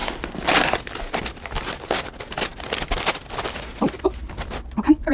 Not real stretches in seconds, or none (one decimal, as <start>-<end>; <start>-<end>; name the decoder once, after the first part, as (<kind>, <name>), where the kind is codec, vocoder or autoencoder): none